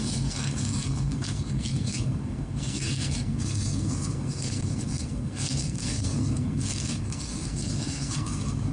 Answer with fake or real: fake